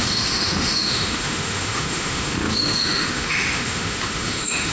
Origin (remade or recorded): remade